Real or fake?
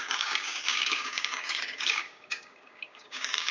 fake